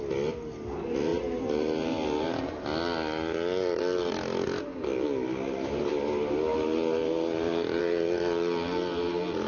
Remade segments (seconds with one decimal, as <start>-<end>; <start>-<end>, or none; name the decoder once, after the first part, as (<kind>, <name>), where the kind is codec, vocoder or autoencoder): none